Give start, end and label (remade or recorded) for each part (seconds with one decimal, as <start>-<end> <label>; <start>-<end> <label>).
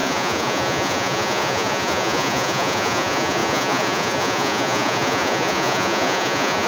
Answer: 0.0-6.7 remade